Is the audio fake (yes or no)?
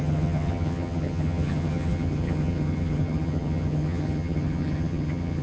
yes